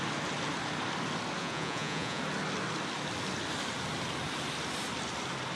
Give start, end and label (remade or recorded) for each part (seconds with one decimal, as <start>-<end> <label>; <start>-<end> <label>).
0.0-1.4 recorded; 1.4-2.2 remade; 2.2-5.6 recorded